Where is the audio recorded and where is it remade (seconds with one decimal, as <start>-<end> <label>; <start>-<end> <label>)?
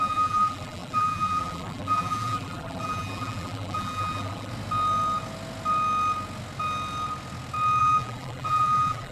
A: 0.0-4.5 remade; 4.5-7.8 recorded; 7.8-9.1 remade